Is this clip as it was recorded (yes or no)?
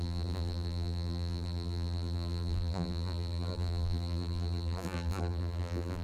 no